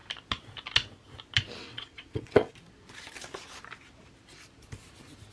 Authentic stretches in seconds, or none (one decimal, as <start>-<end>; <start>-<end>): 0.0-1.6; 2.5-5.3